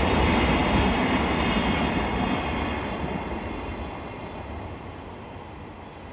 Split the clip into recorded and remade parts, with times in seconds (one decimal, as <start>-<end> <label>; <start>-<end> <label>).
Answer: 0.0-6.1 recorded